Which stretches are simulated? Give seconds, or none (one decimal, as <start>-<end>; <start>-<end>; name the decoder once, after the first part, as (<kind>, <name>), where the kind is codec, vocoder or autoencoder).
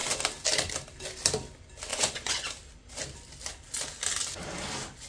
1.9-2.5 (vocoder, Vocos)